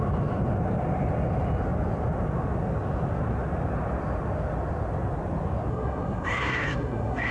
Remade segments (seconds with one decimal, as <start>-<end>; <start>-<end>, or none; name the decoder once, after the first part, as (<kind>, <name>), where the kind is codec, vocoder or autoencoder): 5.7-7.3 (codec, SNAC)